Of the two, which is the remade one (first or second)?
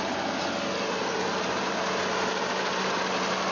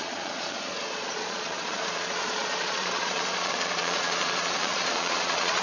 second